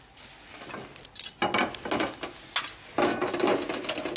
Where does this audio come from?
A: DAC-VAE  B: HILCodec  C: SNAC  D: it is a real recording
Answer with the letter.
D